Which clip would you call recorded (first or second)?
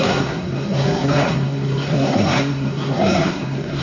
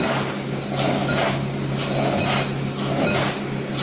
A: second